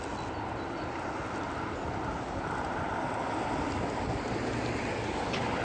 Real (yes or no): yes